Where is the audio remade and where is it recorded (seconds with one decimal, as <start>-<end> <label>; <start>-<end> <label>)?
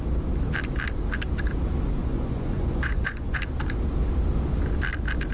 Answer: 0.0-2.0 recorded; 2.0-3.4 remade; 3.4-5.3 recorded